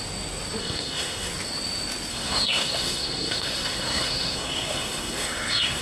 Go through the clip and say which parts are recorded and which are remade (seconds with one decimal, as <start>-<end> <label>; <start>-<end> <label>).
0.0-0.6 recorded; 0.6-1.3 remade; 1.3-2.1 recorded; 2.1-5.8 remade